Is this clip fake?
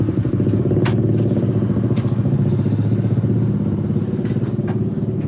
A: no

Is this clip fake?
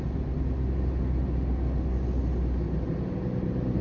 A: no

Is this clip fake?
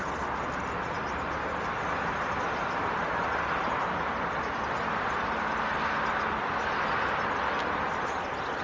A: no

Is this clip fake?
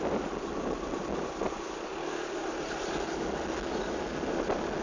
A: no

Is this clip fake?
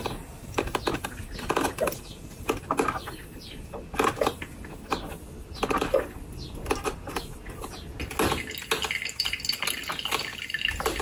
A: no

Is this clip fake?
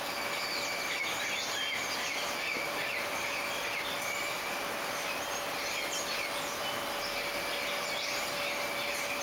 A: no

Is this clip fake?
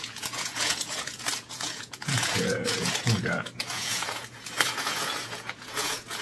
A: yes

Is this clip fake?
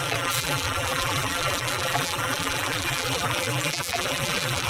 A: yes